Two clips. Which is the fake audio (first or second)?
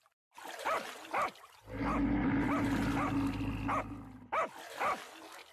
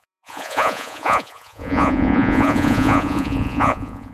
second